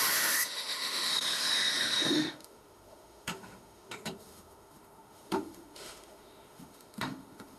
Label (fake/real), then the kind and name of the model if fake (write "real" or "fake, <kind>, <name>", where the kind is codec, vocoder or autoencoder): fake, autoencoder, DAC-VAE